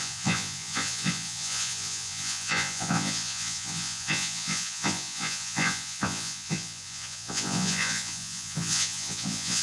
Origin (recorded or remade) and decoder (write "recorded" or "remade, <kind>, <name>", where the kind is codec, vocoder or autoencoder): remade, vocoder, Vocos